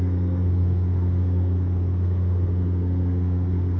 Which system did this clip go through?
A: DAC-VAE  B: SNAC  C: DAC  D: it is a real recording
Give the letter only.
B